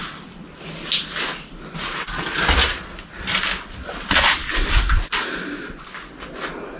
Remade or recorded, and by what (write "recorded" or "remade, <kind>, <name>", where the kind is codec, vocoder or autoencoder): recorded